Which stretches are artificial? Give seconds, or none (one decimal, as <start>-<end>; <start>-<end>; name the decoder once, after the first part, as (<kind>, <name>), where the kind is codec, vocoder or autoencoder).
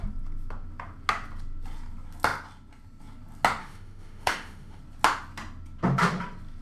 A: 3.6-4.8 (autoencoder, DAC-VAE)